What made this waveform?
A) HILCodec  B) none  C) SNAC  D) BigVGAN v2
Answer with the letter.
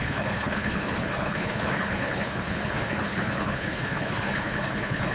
A